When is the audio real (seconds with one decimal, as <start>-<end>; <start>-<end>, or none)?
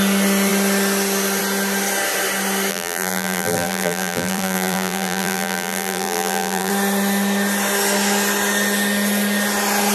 0.0-2.7; 6.7-9.9